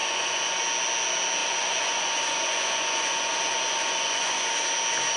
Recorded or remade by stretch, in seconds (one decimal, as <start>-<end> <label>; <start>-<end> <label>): 0.0-0.6 remade; 0.6-1.4 recorded; 1.4-4.5 remade; 4.5-5.2 recorded